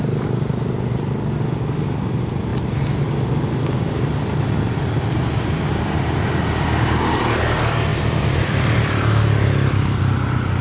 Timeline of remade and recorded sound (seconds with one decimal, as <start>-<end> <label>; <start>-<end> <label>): 0.0-2.5 recorded; 2.5-6.2 remade; 6.2-7.9 recorded; 7.9-10.0 remade; 10.0-10.6 recorded